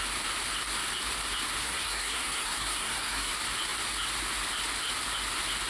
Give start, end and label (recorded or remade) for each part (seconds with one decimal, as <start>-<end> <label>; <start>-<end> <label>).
0.0-1.6 recorded; 1.6-3.3 remade; 3.3-5.7 recorded